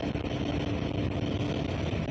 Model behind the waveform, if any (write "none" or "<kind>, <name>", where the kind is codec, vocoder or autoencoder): none